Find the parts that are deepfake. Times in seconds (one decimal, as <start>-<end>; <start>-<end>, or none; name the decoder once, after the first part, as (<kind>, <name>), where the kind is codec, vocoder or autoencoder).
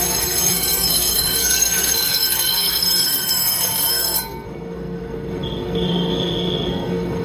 0.0-7.2 (codec, SNAC)